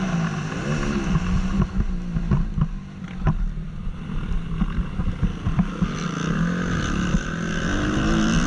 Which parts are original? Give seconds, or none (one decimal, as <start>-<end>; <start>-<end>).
0.0-7.7